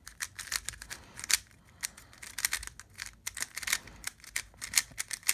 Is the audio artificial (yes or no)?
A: no